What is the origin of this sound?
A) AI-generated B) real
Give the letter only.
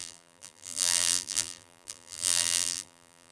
A